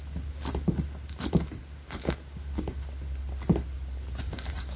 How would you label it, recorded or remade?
recorded